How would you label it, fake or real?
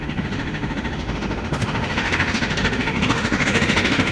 fake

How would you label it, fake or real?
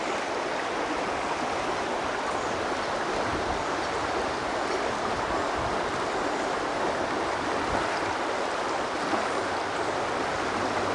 real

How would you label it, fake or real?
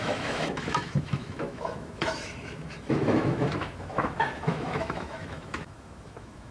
fake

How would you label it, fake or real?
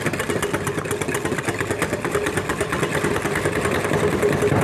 real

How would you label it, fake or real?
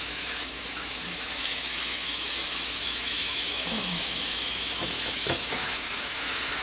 fake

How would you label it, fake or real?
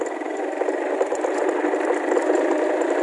real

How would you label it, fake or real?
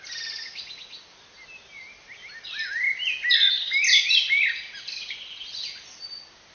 real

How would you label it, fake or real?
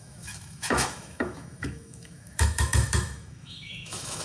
fake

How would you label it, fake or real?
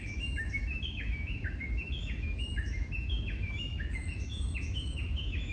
fake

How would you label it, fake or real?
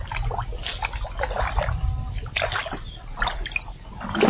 real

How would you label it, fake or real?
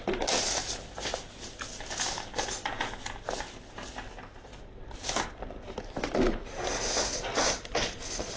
real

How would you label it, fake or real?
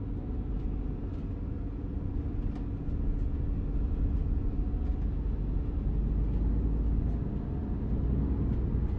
real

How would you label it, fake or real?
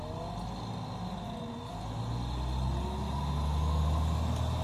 real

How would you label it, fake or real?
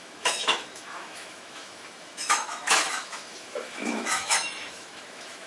fake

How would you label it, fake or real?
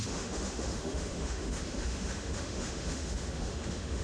fake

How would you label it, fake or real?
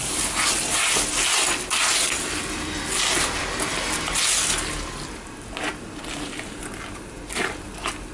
real